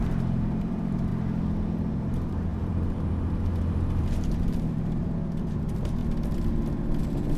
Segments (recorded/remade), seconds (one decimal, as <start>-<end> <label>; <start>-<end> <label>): 0.0-1.1 remade; 1.1-1.9 recorded; 1.9-6.0 remade; 6.0-7.0 recorded; 7.0-7.4 remade